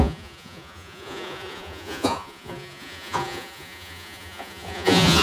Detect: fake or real fake